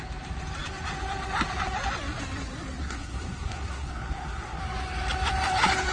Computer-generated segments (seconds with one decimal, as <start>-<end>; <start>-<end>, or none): 2.8-4.6